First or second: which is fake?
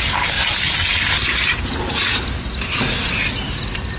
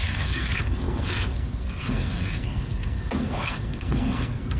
second